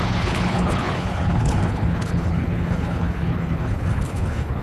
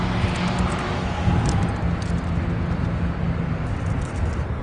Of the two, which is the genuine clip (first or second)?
second